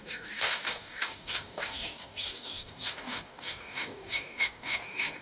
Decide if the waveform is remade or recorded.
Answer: remade